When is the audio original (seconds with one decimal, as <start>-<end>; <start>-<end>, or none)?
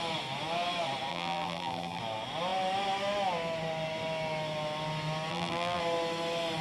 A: 0.0-1.1; 2.0-5.3; 5.8-6.6